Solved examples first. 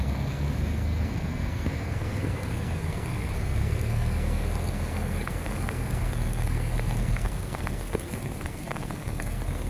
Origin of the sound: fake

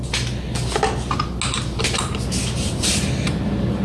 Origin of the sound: real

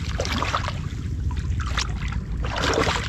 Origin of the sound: real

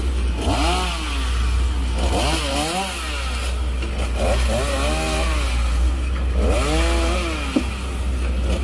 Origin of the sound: real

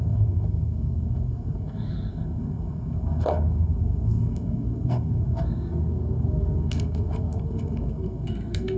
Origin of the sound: fake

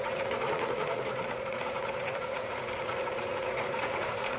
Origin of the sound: fake